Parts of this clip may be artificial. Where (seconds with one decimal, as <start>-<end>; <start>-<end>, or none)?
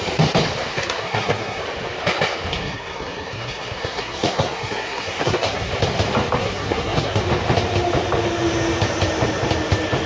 0.7-1.6; 2.5-5.7; 6.4-7.2